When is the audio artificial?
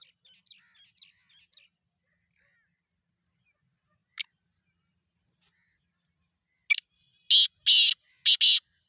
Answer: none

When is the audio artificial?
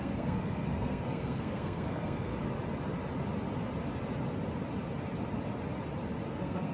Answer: 0.0-2.3 (codec, SNAC); 6.3-6.7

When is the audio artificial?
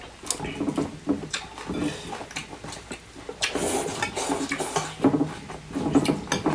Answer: none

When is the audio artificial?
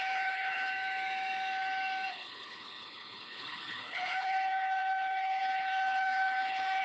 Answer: 0.0-0.7 (codec, HILCodec); 2.1-6.8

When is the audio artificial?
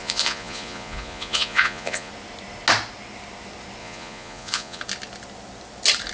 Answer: 0.0-2.1 (vocoder, Vocos); 3.8-4.8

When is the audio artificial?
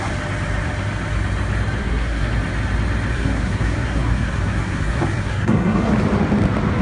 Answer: 1.8-2.3 (codec, SNAC); 3.1-5.9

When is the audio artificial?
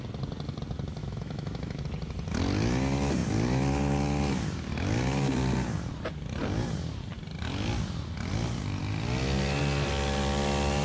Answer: 1.0-1.8 (autoencoder, DAC-VAE)